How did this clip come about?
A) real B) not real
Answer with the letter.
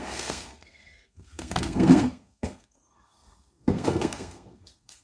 B